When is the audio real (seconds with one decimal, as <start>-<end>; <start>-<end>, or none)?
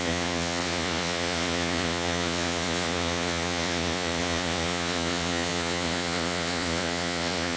none